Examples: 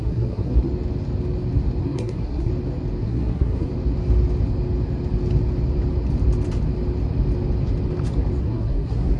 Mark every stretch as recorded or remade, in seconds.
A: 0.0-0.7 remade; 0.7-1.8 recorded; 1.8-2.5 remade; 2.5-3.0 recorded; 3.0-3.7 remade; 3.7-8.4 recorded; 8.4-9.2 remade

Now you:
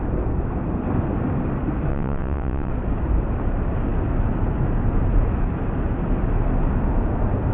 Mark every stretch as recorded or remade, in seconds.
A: 0.0-1.9 recorded; 1.9-2.7 remade; 2.7-7.5 recorded